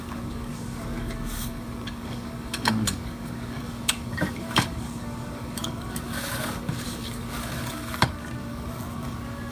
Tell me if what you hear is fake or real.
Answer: fake